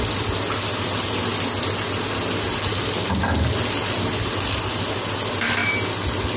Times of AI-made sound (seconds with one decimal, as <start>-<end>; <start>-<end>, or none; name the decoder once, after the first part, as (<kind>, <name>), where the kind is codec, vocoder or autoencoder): none